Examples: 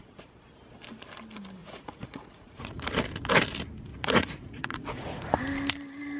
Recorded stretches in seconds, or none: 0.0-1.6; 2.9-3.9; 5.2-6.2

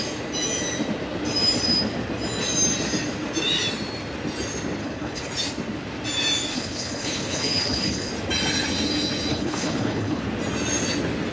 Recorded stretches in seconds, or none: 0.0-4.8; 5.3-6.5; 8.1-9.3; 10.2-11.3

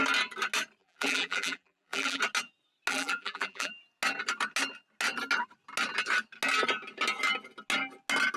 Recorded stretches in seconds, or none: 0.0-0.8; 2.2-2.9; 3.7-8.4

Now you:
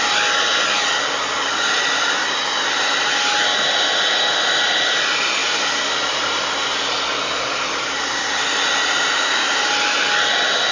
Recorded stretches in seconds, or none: 0.0-10.7

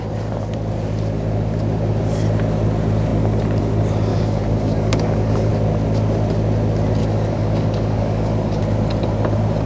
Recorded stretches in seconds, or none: 0.0-4.1; 5.5-7.0; 8.6-9.7